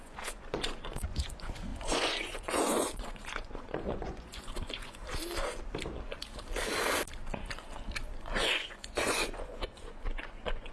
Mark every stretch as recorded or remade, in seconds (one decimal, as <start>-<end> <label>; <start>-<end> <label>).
0.0-5.0 remade; 5.0-8.4 recorded; 8.4-10.7 remade